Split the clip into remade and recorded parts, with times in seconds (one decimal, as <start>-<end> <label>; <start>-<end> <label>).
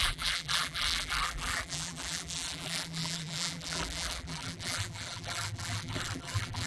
0.0-6.7 remade